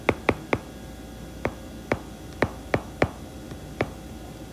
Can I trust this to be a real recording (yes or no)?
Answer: yes